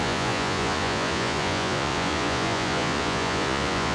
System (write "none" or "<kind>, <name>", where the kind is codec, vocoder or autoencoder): vocoder, Vocos